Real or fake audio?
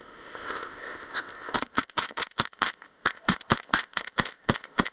fake